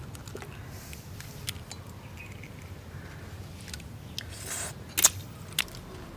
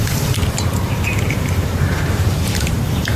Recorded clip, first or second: first